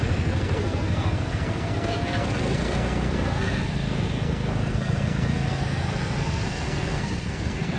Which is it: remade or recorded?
remade